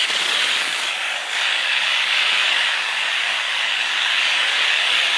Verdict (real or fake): fake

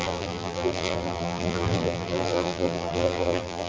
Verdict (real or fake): fake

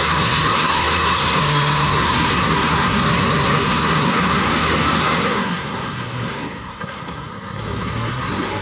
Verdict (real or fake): fake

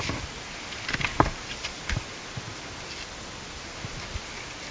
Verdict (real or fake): real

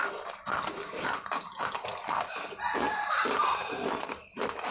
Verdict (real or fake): real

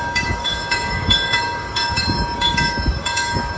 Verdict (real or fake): fake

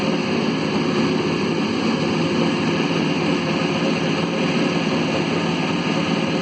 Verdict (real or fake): real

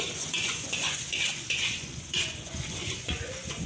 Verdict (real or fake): fake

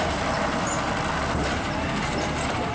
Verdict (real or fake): real